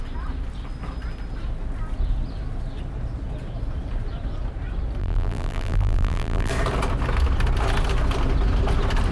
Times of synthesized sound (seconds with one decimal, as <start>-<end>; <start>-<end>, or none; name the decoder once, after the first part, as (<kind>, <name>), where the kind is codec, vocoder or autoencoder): 5.0-6.5 (vocoder, BigVGAN v2)